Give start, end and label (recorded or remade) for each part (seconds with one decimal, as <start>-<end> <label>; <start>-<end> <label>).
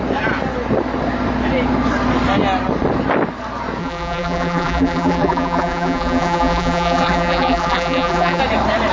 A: 0.0-3.8 recorded; 3.8-8.4 remade; 8.4-8.9 recorded